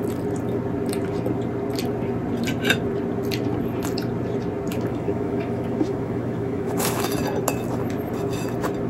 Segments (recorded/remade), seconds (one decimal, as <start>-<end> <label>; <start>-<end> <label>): 0.0-4.7 recorded; 4.7-7.1 remade; 7.1-8.9 recorded